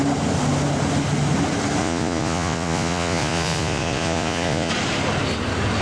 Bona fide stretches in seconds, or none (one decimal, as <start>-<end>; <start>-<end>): 0.0-1.8; 4.7-5.8